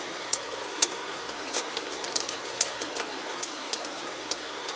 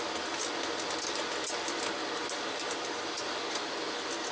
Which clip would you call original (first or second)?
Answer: second